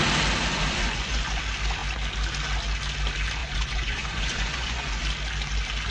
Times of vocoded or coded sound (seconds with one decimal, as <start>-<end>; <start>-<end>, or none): 0.5-1.4; 3.4-5.0